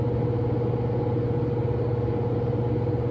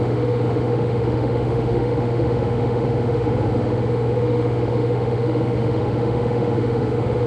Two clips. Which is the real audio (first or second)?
first